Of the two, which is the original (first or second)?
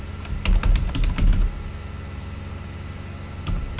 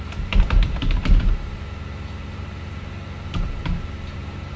first